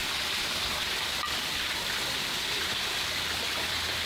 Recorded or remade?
recorded